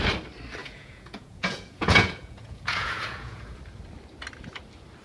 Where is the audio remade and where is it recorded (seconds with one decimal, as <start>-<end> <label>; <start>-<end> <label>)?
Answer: 0.0-0.6 recorded; 0.6-3.6 remade; 3.6-5.0 recorded